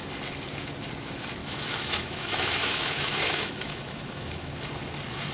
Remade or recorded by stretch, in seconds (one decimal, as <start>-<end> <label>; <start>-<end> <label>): 0.0-1.4 recorded; 1.4-4.6 remade; 4.6-5.3 recorded